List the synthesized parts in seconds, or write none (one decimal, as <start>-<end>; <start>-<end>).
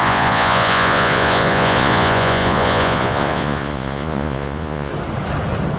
0.0-4.9